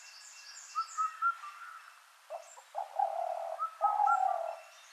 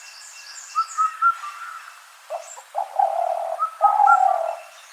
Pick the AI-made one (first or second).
second